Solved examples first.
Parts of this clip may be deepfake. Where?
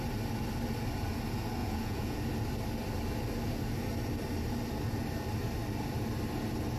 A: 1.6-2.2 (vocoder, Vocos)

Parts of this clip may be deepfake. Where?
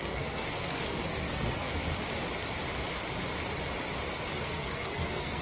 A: 0.0-1.7 (codec, SNAC); 4.3-5.4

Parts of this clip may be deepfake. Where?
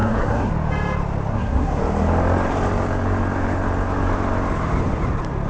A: 0.0-0.5 (codec, SNAC); 1.3-1.8